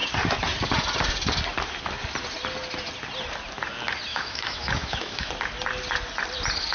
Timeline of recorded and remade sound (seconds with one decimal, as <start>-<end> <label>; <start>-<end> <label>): 0.0-4.1 recorded; 4.1-5.3 remade; 5.3-6.7 recorded